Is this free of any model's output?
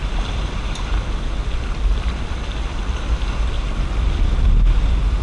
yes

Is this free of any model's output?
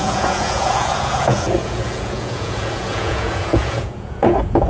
no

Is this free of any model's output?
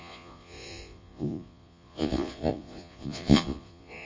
no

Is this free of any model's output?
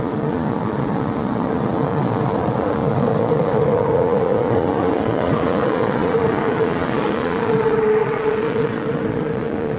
no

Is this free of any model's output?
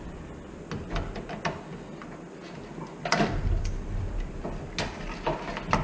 yes